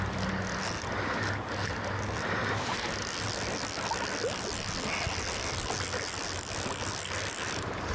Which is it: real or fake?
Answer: real